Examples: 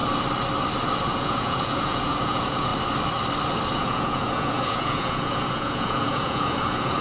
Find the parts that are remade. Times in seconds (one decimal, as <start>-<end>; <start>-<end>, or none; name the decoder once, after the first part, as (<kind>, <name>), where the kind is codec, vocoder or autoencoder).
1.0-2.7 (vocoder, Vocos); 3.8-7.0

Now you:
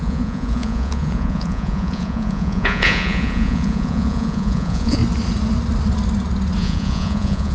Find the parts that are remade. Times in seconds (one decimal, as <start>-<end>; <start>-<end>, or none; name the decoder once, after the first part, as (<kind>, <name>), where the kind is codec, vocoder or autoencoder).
0.0-5.0 (vocoder, Vocos); 6.6-7.5

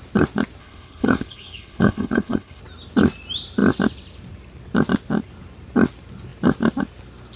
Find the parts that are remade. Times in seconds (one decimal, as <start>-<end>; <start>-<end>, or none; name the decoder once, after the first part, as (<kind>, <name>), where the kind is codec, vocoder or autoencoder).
0.6-2.6 (codec, HILCodec)

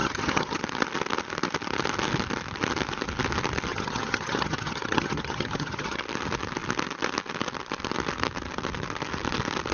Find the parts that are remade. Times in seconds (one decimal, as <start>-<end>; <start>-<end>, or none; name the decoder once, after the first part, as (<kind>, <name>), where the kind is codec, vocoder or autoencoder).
0.0-0.6 (vocoder, HiFi-GAN); 3.7-6.0

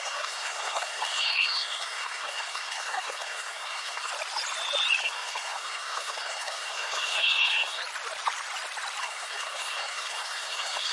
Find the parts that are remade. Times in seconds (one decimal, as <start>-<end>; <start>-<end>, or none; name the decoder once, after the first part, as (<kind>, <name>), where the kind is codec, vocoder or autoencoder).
0.0-4.1 (codec, SNAC); 5.0-7.8; 9.0-10.9

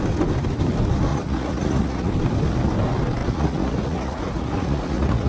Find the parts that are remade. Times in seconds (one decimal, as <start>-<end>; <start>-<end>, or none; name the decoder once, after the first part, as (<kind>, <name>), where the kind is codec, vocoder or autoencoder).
1.1-2.1 (vocoder, Vocos); 3.2-5.3